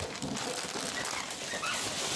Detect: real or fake real